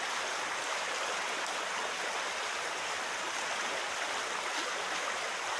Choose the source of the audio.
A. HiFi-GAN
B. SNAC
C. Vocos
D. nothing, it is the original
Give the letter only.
D